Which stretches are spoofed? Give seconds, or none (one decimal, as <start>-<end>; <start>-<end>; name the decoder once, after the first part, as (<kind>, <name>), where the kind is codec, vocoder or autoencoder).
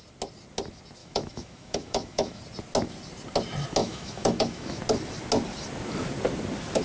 1.0-2.4 (autoencoder, DAC-VAE); 3.8-4.8